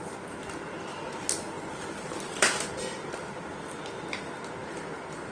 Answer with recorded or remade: recorded